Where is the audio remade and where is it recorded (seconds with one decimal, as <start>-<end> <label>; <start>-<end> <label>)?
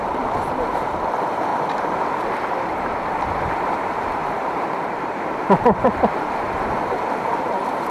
0.0-1.5 remade; 1.5-2.6 recorded; 2.6-7.9 remade